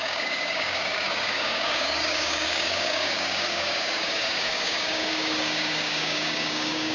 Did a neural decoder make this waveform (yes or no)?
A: yes